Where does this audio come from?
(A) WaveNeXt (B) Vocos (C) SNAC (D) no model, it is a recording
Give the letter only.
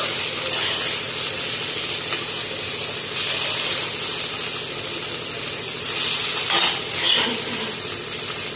D